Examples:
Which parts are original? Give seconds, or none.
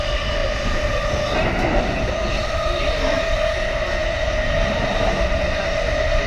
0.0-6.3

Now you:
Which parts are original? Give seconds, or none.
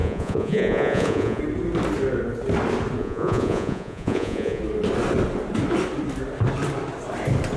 1.4-3.0; 4.6-7.6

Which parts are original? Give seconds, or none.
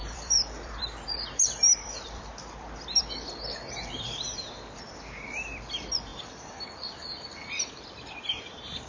none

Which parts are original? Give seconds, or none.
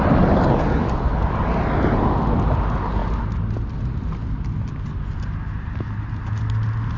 0.0-7.0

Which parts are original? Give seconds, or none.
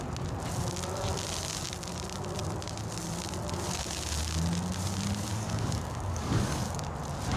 0.0-5.3; 6.8-7.4